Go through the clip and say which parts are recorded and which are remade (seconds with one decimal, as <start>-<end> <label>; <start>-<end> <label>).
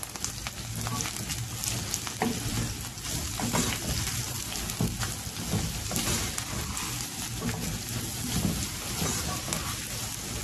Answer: 0.0-10.4 recorded